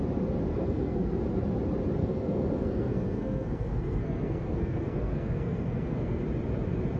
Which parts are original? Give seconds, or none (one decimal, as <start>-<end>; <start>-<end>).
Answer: 0.0-0.5; 1.2-2.0; 6.2-7.0